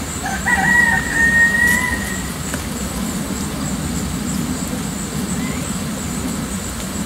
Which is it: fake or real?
real